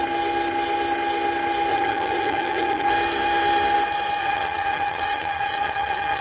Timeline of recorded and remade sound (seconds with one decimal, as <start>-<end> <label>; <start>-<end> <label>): 0.0-1.7 recorded; 1.7-2.9 remade; 2.9-4.2 recorded; 4.2-6.2 remade

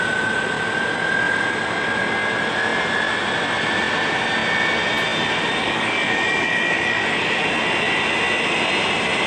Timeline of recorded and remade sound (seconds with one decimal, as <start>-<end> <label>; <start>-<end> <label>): 0.0-5.6 recorded; 5.6-7.4 remade; 7.4-9.3 recorded